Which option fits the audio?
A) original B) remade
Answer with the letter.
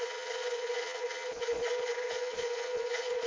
B